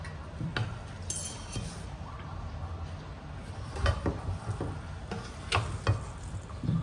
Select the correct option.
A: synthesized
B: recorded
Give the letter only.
B